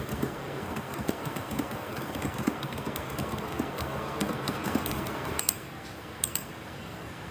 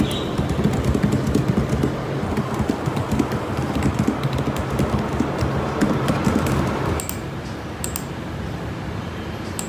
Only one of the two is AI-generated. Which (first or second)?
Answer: first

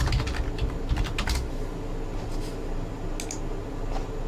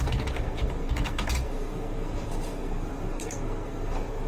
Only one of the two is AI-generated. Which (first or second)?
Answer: second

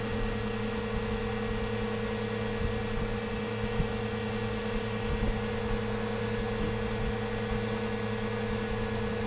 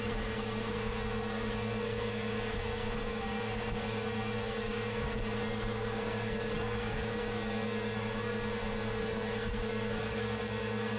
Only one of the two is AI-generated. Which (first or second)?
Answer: second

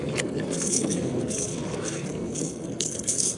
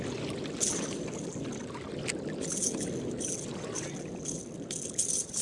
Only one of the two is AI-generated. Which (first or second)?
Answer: first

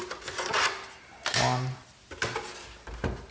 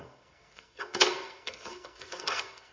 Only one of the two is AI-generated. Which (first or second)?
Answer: second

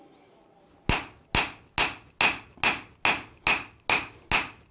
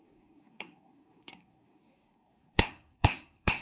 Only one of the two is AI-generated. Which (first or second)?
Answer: second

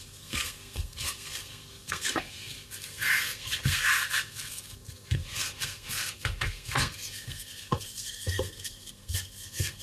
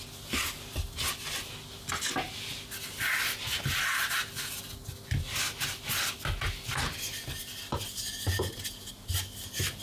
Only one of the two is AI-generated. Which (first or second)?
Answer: first